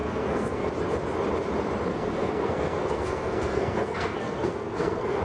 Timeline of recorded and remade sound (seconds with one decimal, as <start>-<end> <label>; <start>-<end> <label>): 0.0-0.7 remade; 0.7-1.9 recorded; 1.9-5.2 remade